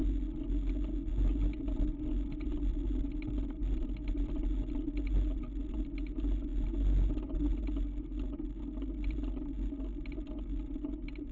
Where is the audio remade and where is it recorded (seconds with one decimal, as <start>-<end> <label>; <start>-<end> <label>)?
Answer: 0.0-11.3 recorded